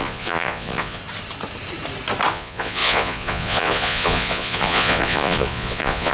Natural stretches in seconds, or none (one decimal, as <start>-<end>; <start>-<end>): 1.0-2.3